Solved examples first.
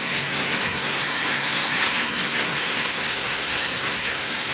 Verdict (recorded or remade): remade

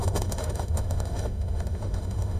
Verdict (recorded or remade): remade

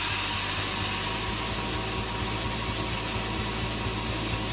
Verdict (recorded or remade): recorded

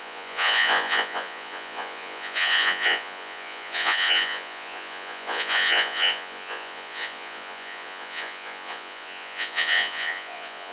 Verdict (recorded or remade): remade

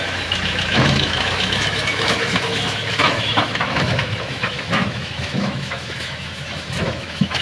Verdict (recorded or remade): remade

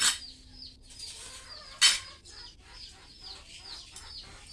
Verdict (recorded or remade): recorded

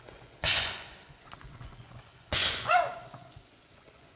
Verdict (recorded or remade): remade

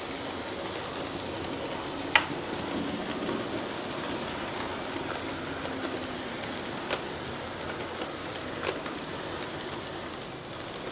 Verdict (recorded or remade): recorded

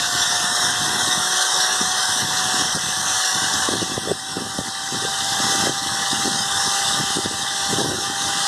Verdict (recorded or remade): remade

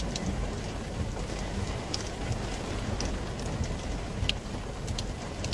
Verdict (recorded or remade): recorded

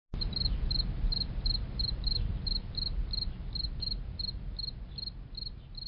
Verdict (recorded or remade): recorded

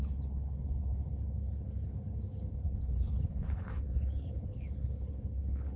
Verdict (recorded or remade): remade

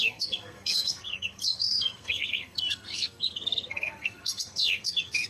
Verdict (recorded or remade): remade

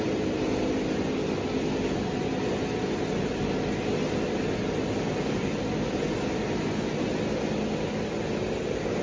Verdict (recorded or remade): recorded